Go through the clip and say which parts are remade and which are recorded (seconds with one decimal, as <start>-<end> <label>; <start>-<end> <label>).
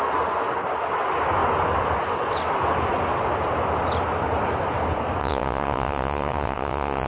0.0-5.2 recorded; 5.2-7.1 remade